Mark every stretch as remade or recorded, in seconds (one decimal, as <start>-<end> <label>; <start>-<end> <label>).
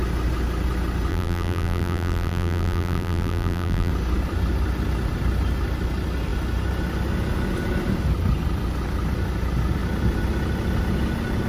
0.0-1.1 recorded; 1.1-3.9 remade; 3.9-11.5 recorded